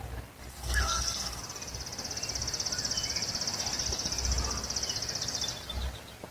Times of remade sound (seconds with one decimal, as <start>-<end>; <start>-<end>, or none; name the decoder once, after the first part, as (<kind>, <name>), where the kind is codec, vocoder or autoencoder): 0.5-1.4 (codec, SNAC)